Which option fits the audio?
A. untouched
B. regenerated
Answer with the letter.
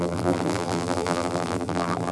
B